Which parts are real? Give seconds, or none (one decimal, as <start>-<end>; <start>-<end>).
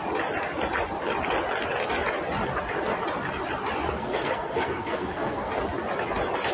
0.0-3.9; 5.5-6.5